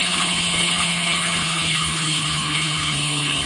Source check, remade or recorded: remade